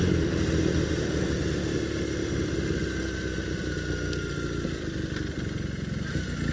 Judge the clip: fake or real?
real